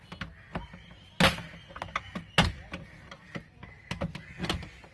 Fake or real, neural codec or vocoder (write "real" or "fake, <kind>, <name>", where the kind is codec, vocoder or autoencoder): real